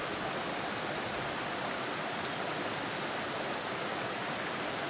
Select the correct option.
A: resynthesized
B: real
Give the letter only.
B